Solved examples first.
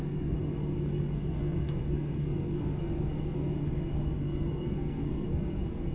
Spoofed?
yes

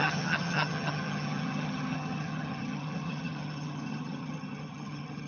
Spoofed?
yes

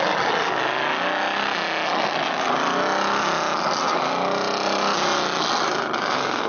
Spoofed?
no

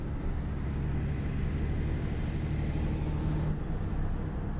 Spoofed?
no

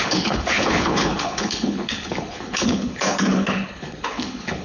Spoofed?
yes